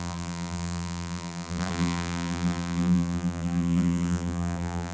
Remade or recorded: remade